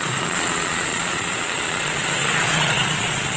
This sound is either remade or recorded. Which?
remade